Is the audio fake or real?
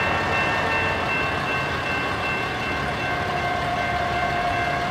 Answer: real